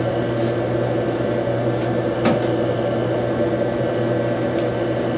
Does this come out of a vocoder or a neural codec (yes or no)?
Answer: no